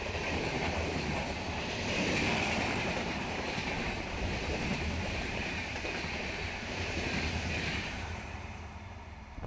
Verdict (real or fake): fake